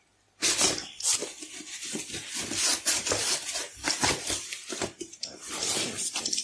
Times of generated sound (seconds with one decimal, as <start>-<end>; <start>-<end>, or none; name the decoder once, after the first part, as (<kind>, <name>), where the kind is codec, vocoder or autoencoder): none